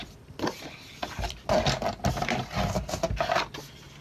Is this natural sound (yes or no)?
yes